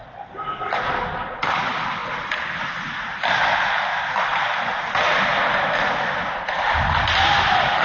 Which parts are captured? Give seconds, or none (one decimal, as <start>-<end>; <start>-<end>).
0.0-7.8